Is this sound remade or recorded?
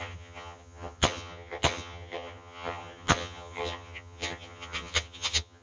remade